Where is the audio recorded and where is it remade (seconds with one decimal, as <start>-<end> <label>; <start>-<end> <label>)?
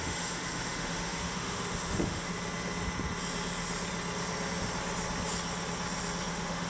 0.0-2.3 remade; 2.3-6.3 recorded; 6.3-6.7 remade